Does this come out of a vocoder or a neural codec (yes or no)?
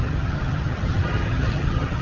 yes